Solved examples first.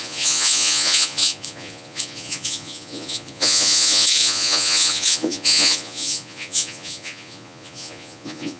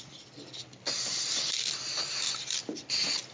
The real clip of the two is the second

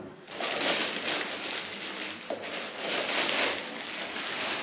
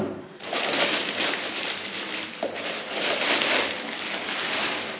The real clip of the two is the first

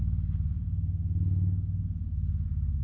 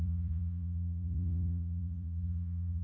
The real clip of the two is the first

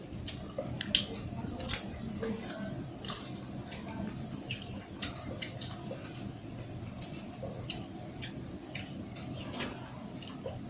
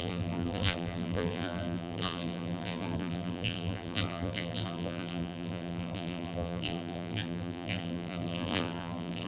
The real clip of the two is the first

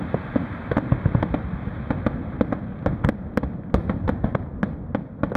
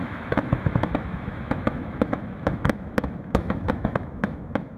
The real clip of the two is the first